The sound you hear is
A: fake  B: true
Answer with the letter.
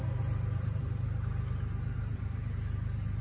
A